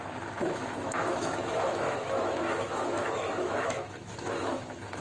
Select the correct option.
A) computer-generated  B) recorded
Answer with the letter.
A